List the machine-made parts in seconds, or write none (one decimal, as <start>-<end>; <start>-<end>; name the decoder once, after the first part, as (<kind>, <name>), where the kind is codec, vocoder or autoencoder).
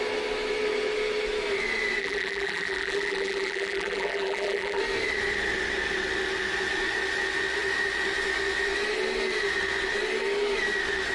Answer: 2.0-4.8 (vocoder, BigVGAN v2)